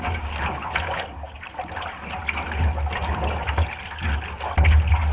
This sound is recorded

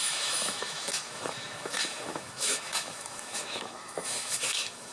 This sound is remade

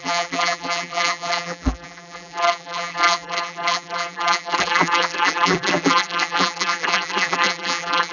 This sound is remade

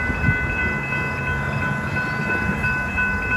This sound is recorded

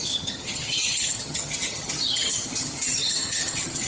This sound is remade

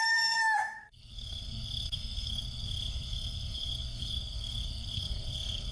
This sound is remade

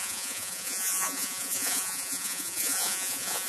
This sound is remade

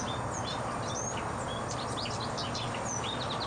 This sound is recorded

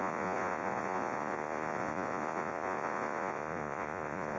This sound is remade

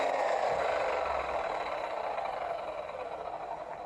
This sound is recorded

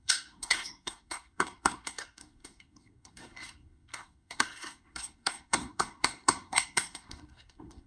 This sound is remade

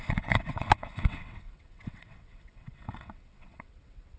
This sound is remade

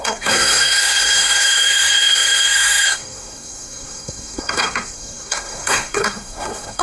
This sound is remade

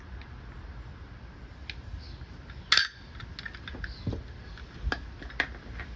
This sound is recorded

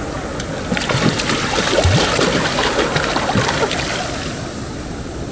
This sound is recorded